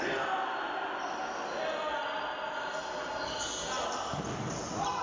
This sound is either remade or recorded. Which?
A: recorded